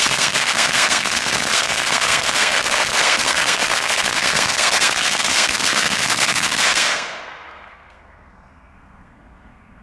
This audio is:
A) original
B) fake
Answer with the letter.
B